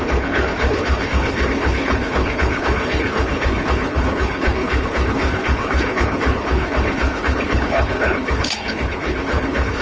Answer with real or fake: fake